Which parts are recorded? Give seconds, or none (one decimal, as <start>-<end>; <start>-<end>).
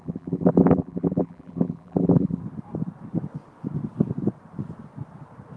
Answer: 2.4-5.6